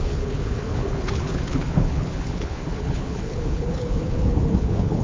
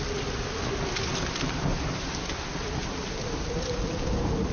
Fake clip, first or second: first